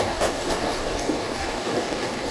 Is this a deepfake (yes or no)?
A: yes